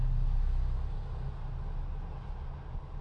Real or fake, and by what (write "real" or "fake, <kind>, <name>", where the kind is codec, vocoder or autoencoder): real